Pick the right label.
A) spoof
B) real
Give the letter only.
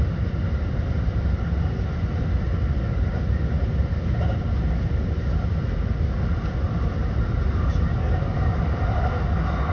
B